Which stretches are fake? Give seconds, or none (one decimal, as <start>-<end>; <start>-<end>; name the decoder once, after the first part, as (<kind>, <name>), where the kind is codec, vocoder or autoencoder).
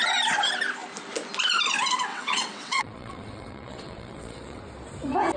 2.1-4.6 (vocoder, WaveNeXt)